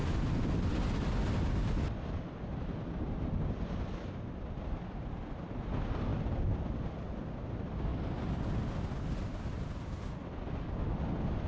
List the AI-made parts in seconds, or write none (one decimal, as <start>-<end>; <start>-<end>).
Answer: none